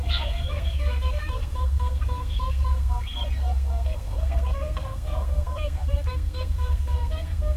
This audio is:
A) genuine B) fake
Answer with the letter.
B